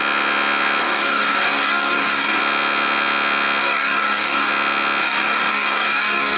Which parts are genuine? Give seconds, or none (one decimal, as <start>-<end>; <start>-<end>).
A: 0.0-0.8; 2.4-3.6; 4.5-5.0